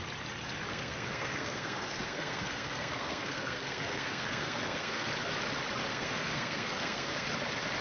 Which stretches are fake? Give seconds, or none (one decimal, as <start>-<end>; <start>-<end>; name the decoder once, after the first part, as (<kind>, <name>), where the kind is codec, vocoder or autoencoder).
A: 0.7-5.1 (codec, SNAC); 5.9-7.3